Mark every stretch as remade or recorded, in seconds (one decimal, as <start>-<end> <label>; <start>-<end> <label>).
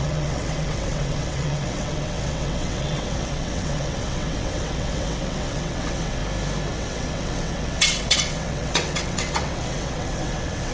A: 0.0-6.2 remade; 6.2-6.7 recorded; 6.7-10.7 remade